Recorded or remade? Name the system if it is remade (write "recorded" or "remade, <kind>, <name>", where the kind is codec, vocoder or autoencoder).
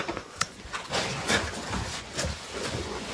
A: remade, vocoder, Vocos